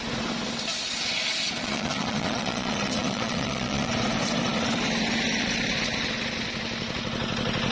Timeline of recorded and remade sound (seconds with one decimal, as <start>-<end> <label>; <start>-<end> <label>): 0.0-1.6 recorded; 1.6-3.9 remade; 3.9-7.7 recorded

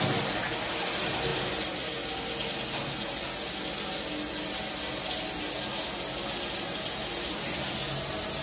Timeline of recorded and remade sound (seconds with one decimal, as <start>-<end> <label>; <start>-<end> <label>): 0.0-8.4 recorded

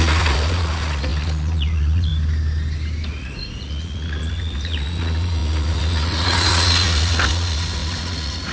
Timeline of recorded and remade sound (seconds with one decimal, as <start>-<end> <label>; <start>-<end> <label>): 0.0-2.1 remade; 2.1-3.1 recorded; 3.1-8.5 remade